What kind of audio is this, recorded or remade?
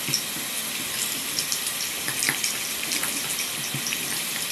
remade